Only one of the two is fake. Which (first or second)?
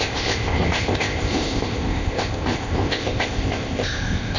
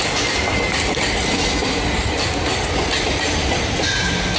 first